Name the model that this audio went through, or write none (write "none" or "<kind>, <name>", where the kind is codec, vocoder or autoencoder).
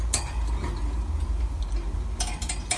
none